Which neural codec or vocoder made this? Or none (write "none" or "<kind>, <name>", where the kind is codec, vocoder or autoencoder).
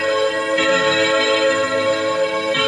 codec, SNAC